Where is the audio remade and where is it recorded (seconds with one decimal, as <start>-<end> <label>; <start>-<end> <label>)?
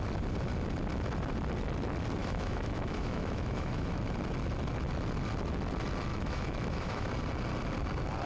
0.0-2.2 recorded; 2.2-4.0 remade; 4.0-6.1 recorded; 6.1-7.1 remade; 7.1-8.3 recorded